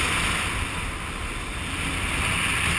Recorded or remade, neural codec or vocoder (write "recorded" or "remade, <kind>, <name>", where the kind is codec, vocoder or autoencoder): recorded